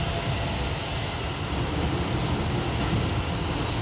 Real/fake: real